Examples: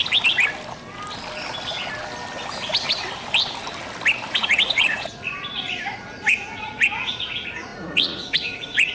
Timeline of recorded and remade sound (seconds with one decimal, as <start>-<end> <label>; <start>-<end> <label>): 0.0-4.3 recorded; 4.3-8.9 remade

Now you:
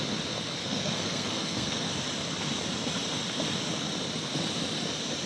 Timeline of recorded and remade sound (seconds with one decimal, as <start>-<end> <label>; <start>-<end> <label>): 0.0-0.6 recorded; 0.6-1.9 remade; 1.9-5.3 recorded

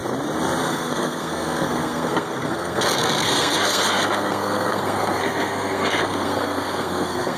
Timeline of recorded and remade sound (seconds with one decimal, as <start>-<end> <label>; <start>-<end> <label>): 0.0-0.6 recorded; 0.6-7.4 remade

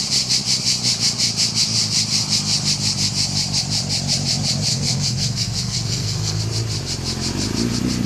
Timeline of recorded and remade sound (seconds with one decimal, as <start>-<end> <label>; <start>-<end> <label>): 0.0-4.7 recorded; 4.7-6.4 remade; 6.4-8.1 recorded

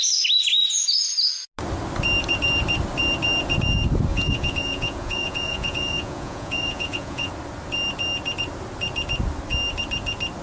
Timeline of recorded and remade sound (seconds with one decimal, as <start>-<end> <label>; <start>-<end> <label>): 0.0-4.1 recorded; 4.1-7.3 remade; 7.3-10.4 recorded

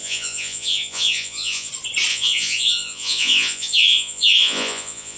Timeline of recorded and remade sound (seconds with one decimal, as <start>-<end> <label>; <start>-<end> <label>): 0.0-1.7 remade; 1.7-2.1 recorded; 2.1-5.2 remade

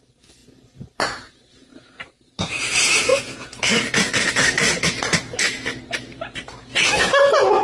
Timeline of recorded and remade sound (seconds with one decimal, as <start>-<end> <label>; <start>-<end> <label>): 0.0-3.1 remade; 3.1-5.8 recorded; 5.8-6.6 remade; 6.6-7.6 recorded